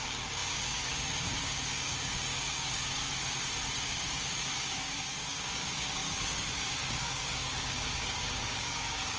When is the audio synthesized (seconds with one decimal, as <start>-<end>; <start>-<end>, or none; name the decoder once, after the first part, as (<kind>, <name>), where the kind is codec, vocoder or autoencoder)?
0.0-3.0 (codec, DAC); 3.8-9.2